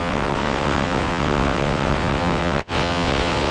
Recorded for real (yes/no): no